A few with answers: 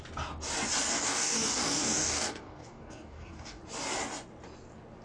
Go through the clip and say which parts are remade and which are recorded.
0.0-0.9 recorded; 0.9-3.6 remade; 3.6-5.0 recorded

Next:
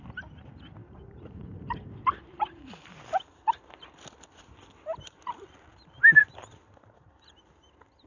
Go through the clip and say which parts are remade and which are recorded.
0.0-0.8 recorded; 0.8-3.9 remade; 3.9-8.1 recorded

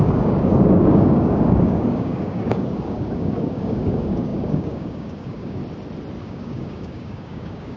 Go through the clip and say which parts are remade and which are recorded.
0.0-5.6 remade; 5.6-6.2 recorded; 6.2-7.8 remade

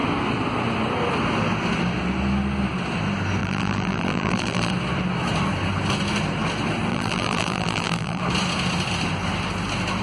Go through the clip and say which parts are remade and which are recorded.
0.0-3.4 recorded; 3.4-4.7 remade; 4.7-6.9 recorded; 6.9-8.2 remade; 8.2-10.0 recorded

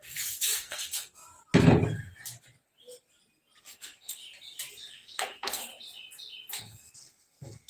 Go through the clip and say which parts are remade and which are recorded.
0.0-1.2 remade; 1.2-3.6 recorded; 3.6-4.2 remade; 4.2-4.9 recorded; 4.9-5.7 remade; 5.7-6.6 recorded; 6.6-7.7 remade